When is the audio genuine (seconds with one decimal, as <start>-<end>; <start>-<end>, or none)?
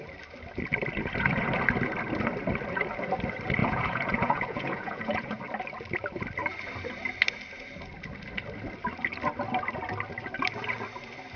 0.0-3.6; 5.4-11.4